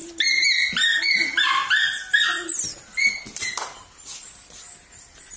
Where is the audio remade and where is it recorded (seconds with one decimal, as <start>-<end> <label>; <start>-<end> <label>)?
0.0-5.4 recorded